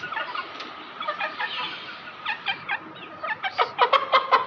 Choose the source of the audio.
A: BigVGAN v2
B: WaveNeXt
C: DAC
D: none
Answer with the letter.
A